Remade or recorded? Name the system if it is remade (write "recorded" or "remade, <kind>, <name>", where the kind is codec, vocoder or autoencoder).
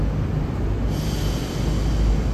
recorded